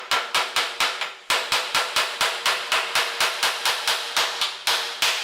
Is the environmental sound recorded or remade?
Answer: recorded